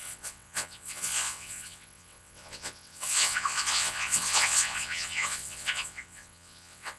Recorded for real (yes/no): no